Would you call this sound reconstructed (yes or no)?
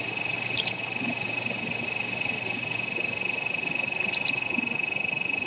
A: no